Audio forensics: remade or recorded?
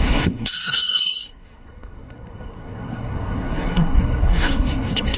remade